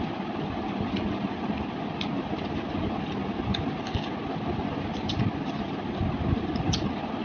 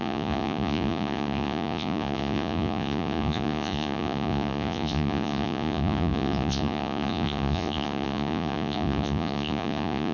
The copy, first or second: second